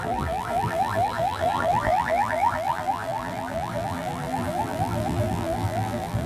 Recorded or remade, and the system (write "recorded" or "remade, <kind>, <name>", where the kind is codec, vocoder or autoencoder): remade, vocoder, BigVGAN v2